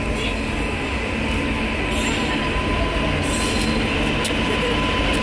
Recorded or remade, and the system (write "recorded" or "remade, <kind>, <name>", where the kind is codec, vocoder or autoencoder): recorded